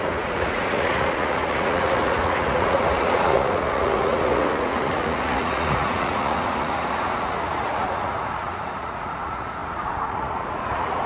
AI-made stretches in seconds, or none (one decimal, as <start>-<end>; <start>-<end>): 0.0-11.1